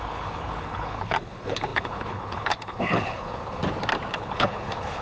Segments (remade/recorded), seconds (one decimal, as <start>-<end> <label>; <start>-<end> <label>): 0.0-3.6 remade; 3.6-4.1 recorded; 4.1-5.0 remade